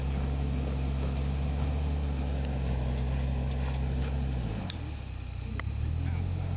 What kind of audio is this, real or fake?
real